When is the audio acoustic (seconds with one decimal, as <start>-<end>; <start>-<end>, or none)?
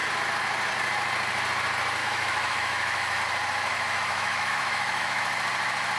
0.0-2.0; 3.2-3.7; 5.2-6.0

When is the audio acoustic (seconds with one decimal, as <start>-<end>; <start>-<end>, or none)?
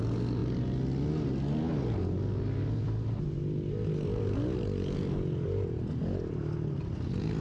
0.0-7.4